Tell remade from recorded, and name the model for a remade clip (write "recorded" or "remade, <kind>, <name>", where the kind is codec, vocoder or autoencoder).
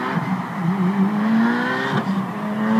recorded